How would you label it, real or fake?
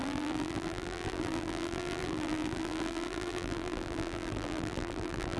fake